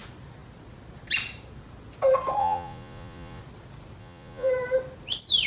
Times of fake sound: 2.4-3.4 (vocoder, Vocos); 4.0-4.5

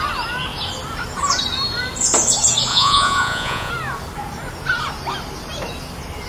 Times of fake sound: 2.7-3.7 (vocoder, Vocos)

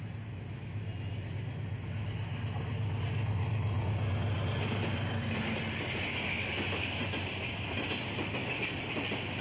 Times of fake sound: 8.4-8.9 (codec, DAC)

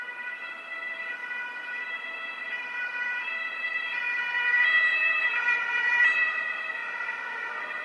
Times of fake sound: none

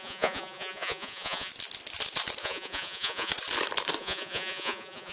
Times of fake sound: 0.0-1.5 (vocoder, Vocos); 2.4-3.3; 4.0-5.1

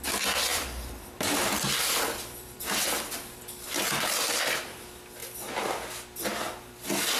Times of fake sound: 0.5-4.8 (vocoder, BigVGAN v2); 5.2-5.9

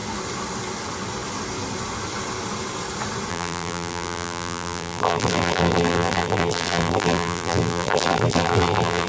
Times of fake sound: 3.3-9.1 (vocoder, BigVGAN v2)